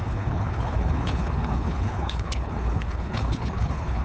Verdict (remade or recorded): remade